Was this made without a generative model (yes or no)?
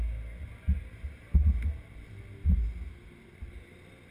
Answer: yes